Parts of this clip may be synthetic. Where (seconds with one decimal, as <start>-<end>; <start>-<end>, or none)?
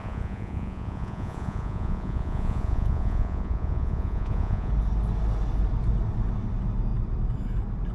0.0-4.7